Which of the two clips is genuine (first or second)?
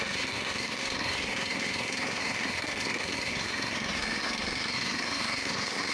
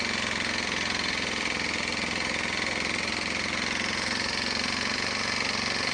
second